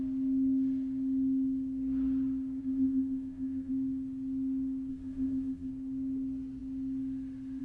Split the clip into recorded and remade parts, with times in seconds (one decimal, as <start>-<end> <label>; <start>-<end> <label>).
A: 0.0-2.6 recorded; 2.6-3.7 remade; 3.7-4.9 recorded; 4.9-5.7 remade; 5.7-7.6 recorded